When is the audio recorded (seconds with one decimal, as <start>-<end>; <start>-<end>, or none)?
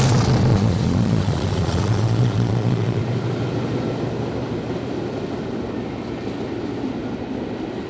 0.0-0.5; 3.0-7.9